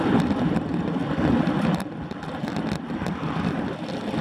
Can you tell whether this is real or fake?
real